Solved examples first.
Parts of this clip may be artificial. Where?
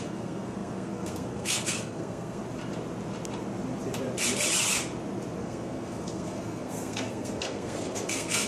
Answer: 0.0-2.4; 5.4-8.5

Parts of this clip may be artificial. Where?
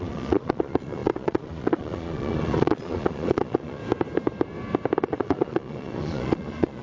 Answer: 0.0-3.8; 5.0-6.8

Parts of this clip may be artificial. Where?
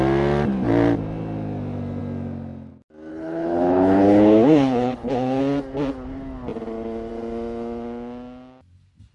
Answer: 3.1-5.4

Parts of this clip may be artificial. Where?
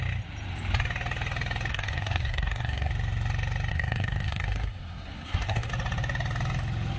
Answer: 1.7-2.9; 3.7-5.7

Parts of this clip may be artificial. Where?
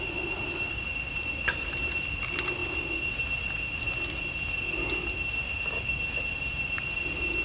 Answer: none